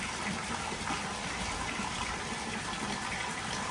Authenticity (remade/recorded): recorded